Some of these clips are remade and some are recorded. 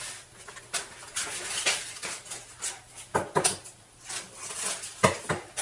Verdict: recorded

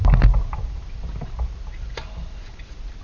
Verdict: recorded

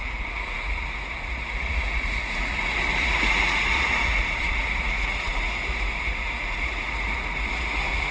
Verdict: remade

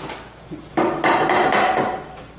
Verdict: recorded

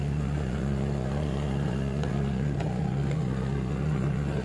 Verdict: remade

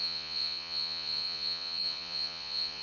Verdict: remade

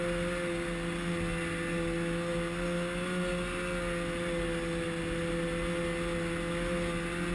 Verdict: recorded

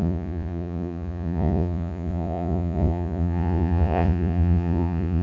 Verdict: remade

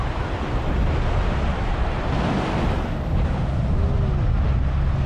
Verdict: recorded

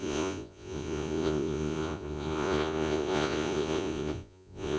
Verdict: remade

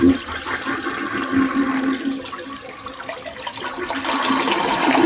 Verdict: recorded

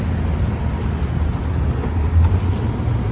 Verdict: recorded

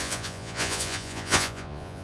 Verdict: remade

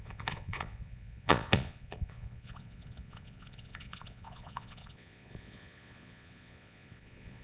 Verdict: remade